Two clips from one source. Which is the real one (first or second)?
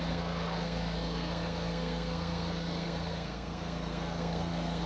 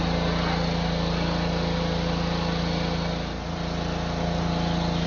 second